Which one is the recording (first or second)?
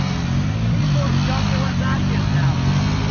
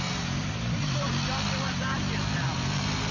first